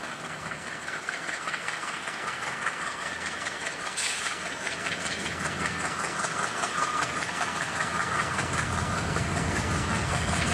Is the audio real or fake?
fake